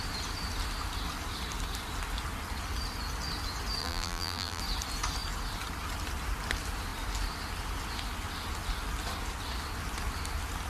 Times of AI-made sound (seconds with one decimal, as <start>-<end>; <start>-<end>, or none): 3.8-4.6